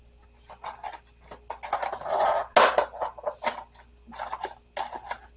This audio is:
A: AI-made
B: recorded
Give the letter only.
B